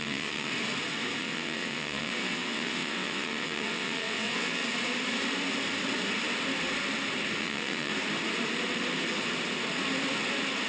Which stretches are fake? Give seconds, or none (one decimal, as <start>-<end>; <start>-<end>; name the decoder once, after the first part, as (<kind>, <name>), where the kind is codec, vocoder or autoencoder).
0.0-0.5 (vocoder, WaveNeXt); 1.2-4.6; 7.4-7.9